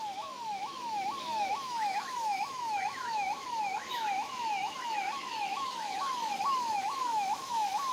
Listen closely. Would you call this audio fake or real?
fake